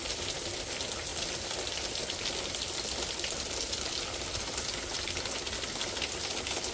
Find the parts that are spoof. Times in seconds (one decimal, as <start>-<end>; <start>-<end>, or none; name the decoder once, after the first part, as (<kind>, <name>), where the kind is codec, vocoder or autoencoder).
none